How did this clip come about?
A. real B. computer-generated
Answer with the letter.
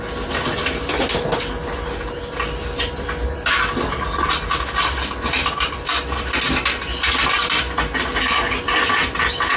A